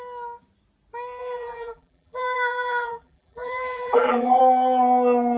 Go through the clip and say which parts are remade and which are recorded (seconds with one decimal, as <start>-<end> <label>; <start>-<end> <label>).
0.0-1.2 recorded; 1.2-4.4 remade; 4.4-5.4 recorded